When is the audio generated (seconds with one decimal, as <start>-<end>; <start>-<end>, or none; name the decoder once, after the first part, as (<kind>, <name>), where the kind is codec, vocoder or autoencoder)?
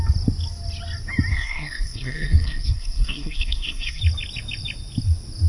1.3-4.0 (codec, SNAC)